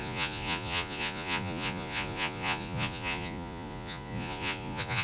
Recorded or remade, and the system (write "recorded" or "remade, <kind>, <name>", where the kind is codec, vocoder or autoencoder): remade, vocoder, Vocos